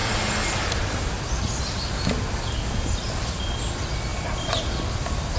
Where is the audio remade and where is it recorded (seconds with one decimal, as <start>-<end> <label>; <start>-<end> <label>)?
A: 0.0-5.4 recorded